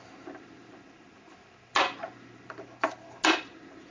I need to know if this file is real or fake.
real